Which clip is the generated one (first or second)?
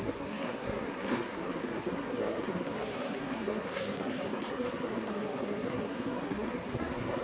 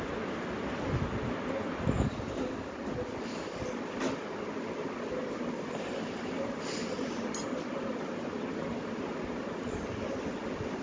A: first